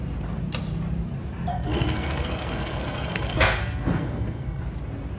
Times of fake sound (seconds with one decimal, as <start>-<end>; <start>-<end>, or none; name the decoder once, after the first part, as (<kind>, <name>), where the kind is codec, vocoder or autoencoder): 1.5-4.6 (codec, SNAC)